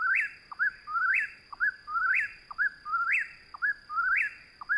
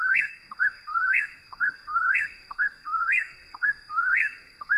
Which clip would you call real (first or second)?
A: first